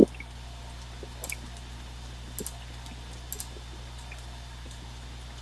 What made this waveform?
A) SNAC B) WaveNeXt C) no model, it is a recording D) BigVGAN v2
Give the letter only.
C